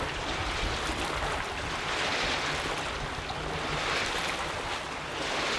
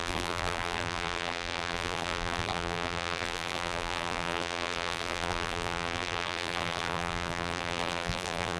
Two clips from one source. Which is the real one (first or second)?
first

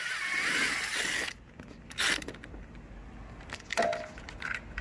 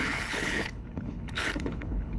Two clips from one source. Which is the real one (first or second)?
first